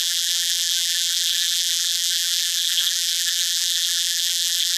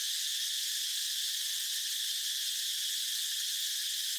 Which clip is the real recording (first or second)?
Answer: second